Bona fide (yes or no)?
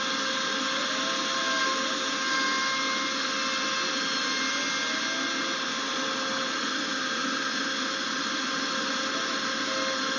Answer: yes